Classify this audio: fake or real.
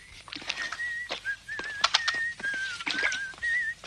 real